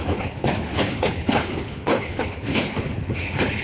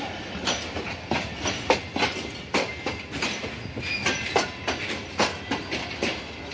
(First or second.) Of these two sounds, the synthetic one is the first